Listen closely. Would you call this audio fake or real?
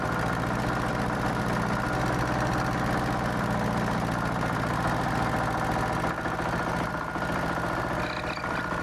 real